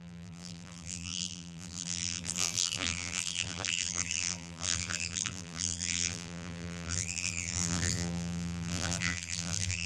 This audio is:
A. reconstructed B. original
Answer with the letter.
A